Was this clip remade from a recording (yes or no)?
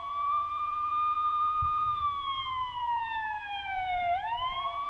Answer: yes